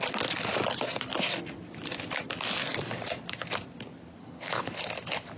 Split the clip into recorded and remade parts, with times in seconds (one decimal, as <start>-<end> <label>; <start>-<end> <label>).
0.0-4.2 recorded; 4.2-4.8 remade; 4.8-5.4 recorded